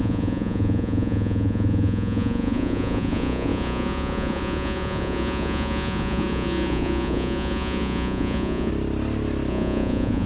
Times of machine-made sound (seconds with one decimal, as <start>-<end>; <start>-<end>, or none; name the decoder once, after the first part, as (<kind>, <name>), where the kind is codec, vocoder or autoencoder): 0.0-8.7 (vocoder, Vocos); 9.5-10.3